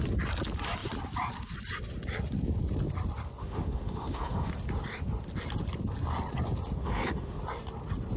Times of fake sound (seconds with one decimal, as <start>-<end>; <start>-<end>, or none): 3.4-4.5; 6.8-7.4